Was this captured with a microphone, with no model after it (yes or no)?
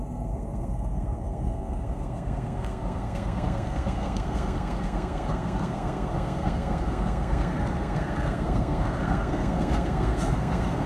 no